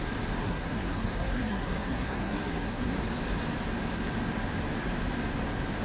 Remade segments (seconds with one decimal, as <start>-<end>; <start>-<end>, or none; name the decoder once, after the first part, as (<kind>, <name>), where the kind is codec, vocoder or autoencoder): 0.4-3.0 (codec, SNAC)